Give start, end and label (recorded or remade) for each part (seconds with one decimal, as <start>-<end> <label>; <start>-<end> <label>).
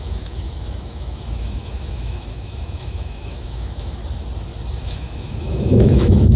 0.0-4.0 remade; 4.0-4.7 recorded; 4.7-6.4 remade